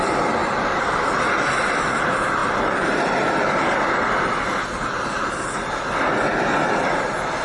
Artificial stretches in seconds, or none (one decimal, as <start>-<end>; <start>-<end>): 0.4-1.0; 2.4-5.8